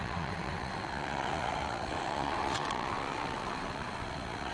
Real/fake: fake